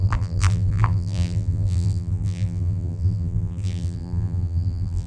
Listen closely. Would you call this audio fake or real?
fake